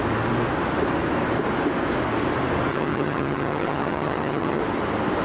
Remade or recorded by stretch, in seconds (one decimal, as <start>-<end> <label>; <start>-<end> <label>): 0.0-2.7 recorded; 2.7-4.6 remade; 4.6-5.2 recorded